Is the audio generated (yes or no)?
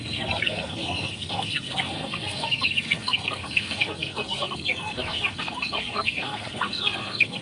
yes